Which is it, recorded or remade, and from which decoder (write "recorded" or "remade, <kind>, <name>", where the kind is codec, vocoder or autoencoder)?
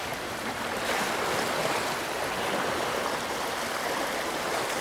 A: recorded